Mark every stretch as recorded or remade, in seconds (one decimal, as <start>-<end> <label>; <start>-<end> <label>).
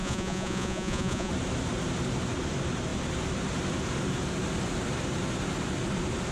0.0-1.3 remade; 1.3-6.3 recorded